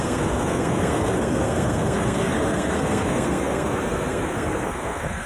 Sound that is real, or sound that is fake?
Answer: fake